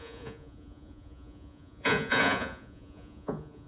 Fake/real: fake